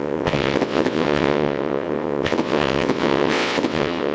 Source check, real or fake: fake